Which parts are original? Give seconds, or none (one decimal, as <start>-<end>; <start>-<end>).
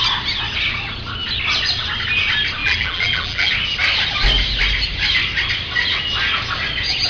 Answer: 0.0-2.6; 3.5-7.1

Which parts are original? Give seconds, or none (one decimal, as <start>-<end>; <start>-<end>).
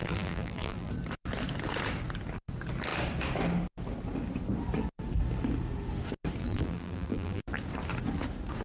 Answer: 0.9-6.4; 7.4-8.6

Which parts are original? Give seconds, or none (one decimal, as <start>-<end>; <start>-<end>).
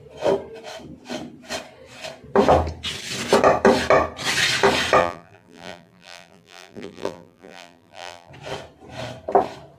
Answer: 0.0-5.0; 8.3-9.8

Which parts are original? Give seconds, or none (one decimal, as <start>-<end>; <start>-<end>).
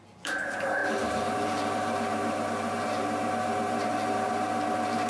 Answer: none